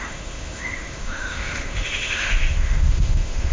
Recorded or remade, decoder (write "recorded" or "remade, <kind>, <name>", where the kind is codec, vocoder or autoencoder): remade, autoencoder, DAC-VAE